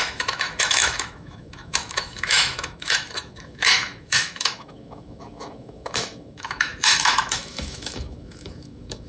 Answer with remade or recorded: remade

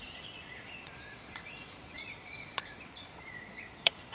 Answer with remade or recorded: remade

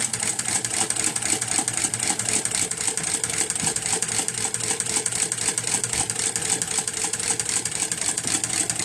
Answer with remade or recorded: recorded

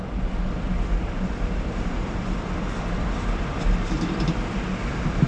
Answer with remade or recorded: remade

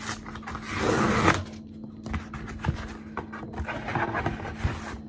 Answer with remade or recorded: recorded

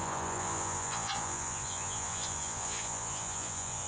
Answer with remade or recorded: remade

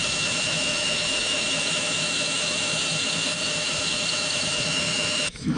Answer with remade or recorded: remade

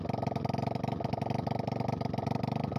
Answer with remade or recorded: recorded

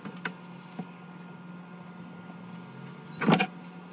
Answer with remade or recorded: recorded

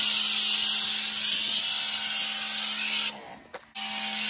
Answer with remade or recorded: recorded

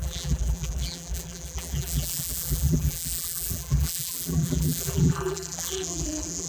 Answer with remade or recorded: remade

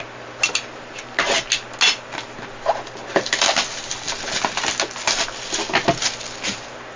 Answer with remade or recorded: recorded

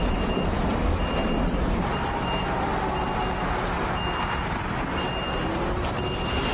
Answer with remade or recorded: recorded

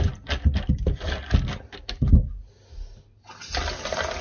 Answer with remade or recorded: recorded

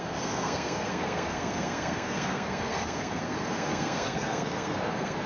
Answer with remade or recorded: remade